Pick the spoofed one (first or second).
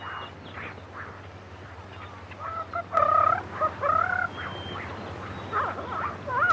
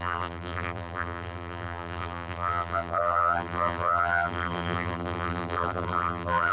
second